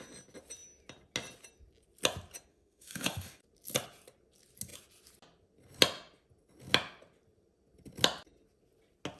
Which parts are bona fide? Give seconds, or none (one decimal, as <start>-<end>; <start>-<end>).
0.0-2.5; 3.4-9.2